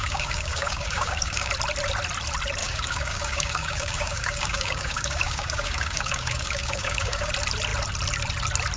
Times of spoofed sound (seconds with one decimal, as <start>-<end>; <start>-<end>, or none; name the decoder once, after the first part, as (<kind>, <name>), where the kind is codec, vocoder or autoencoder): 0.0-1.5 (codec, DAC); 2.6-7.3